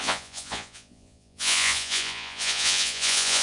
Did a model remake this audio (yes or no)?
yes